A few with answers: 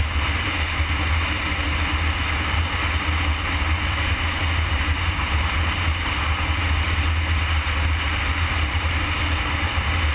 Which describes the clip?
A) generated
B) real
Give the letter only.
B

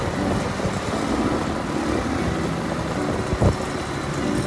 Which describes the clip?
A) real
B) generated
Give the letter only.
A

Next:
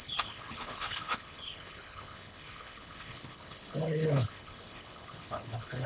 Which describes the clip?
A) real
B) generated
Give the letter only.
B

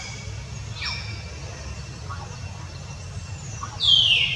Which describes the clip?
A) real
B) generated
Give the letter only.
A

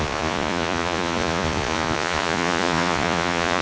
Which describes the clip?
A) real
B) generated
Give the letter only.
B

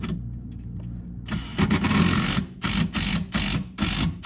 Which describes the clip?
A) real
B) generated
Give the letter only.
A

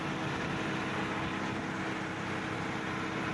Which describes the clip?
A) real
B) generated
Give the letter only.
A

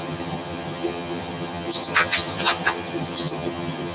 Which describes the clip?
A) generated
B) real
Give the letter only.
A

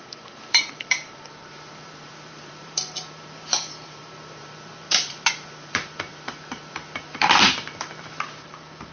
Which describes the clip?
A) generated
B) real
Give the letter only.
A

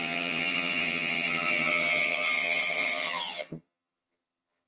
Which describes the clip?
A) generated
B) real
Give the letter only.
A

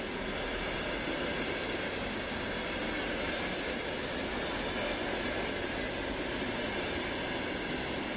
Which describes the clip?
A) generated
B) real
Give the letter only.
B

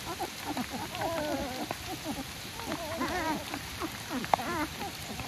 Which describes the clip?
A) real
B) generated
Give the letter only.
B